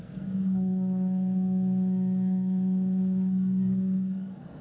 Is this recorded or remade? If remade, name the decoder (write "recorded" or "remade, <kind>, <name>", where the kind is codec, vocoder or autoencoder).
remade, codec, SNAC